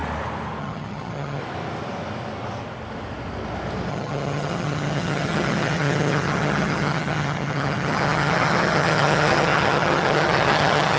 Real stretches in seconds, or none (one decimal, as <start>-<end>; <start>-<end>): 0.0-0.6; 1.4-3.9